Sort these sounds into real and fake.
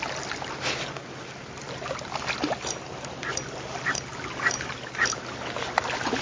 real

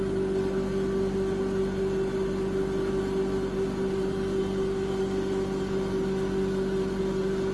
real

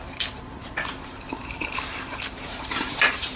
fake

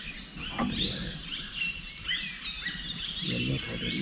real